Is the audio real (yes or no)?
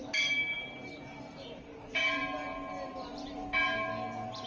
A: yes